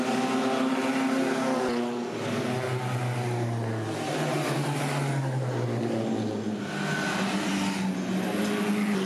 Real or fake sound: real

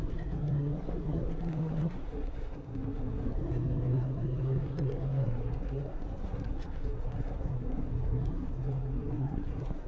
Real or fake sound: fake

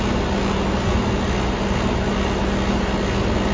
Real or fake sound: real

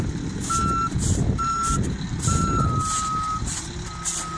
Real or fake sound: real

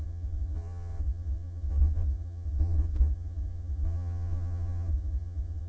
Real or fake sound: fake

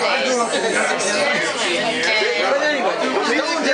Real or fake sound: real